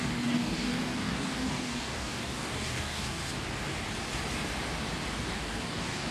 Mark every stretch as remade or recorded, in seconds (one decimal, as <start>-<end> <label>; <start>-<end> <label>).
0.0-3.2 remade; 3.2-5.2 recorded; 5.2-6.1 remade